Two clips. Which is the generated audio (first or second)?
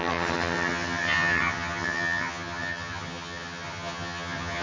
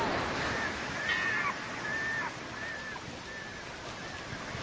first